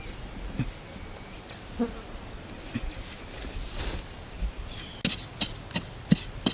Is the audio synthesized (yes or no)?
no